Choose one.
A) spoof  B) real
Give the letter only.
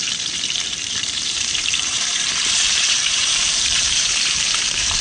A